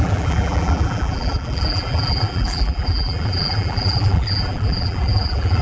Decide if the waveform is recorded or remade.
remade